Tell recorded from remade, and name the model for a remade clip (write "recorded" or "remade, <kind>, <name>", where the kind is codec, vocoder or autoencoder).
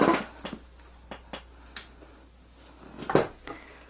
recorded